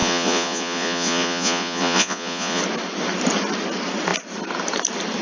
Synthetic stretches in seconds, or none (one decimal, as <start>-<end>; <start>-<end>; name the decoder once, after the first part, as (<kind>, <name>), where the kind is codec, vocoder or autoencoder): 0.0-2.6 (vocoder, Vocos)